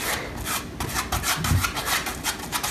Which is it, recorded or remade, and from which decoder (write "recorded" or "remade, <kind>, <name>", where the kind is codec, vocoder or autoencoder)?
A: recorded